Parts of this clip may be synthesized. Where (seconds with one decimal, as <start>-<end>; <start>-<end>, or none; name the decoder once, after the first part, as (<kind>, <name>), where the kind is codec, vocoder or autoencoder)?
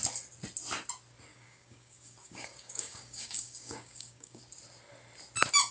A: 1.3-4.4 (codec, DAC)